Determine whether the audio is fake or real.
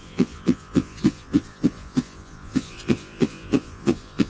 fake